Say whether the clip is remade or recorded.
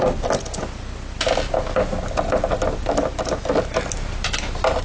recorded